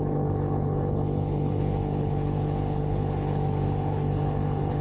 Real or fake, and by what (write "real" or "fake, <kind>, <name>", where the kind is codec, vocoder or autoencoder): fake, codec, HILCodec